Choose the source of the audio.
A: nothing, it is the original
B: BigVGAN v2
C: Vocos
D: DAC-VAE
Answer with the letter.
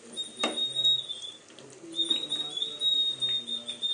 A